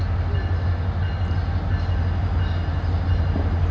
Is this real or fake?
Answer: real